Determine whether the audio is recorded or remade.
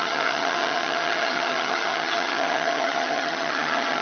remade